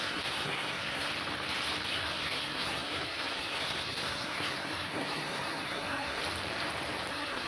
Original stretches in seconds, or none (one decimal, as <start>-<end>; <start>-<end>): 1.1-1.9; 6.2-7.1